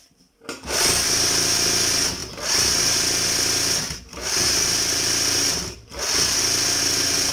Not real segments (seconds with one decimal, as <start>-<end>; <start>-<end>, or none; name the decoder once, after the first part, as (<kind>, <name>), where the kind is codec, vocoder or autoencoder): none